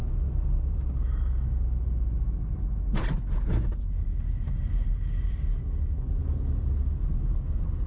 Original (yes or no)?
yes